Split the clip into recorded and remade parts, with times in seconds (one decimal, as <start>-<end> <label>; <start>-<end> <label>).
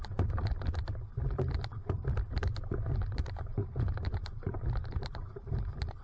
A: 0.0-3.5 recorded; 3.5-5.5 remade; 5.5-6.0 recorded